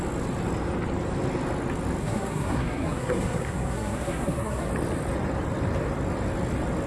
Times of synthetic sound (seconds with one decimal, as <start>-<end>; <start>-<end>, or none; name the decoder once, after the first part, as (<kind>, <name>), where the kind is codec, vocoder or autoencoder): 2.0-4.7 (codec, SNAC)